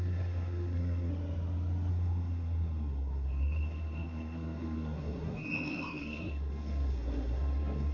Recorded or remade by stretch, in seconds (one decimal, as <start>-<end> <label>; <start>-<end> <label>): 0.0-1.1 remade; 1.1-1.9 recorded; 1.9-7.9 remade